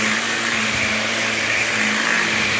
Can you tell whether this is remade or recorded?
recorded